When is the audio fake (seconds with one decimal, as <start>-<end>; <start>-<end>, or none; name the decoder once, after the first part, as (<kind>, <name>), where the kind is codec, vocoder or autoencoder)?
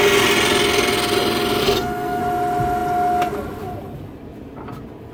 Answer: 1.6-2.2 (codec, SNAC)